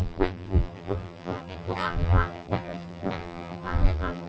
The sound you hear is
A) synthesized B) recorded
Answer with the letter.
A